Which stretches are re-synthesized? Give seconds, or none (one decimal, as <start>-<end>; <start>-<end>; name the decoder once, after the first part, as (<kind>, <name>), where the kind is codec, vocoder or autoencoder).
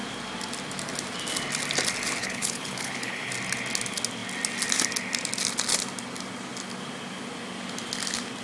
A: 2.2-3.3 (codec, HILCodec)